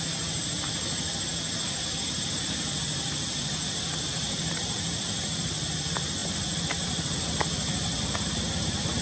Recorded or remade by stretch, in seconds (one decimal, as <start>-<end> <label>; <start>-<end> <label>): 0.0-9.0 recorded